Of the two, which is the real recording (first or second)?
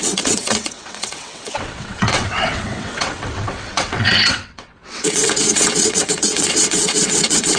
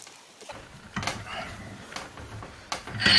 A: second